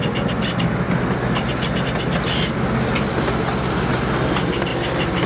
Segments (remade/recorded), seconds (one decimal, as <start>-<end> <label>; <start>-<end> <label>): 0.0-5.3 recorded